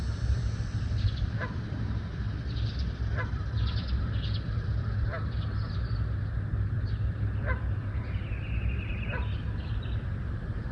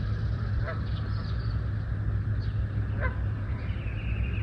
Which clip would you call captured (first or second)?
second